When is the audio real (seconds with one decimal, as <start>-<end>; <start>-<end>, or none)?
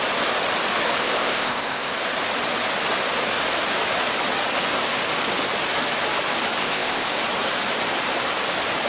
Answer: 0.0-1.0; 1.9-6.6; 7.1-8.9